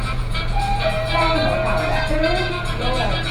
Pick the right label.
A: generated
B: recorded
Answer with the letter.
A